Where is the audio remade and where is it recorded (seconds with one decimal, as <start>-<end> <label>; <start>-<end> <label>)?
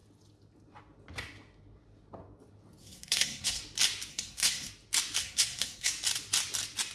0.0-2.8 recorded; 2.8-3.6 remade; 3.6-4.1 recorded; 4.1-4.7 remade; 4.7-5.2 recorded; 5.2-5.9 remade; 5.9-6.9 recorded